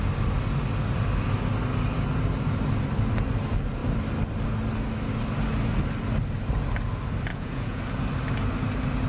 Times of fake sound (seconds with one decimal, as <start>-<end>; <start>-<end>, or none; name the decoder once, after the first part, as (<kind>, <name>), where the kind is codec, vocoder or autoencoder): 7.3-7.8 (vocoder, Vocos)